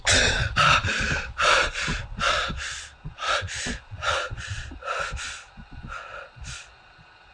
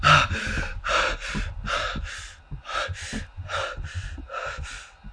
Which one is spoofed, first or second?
first